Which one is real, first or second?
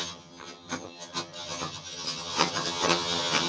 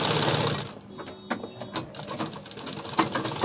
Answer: second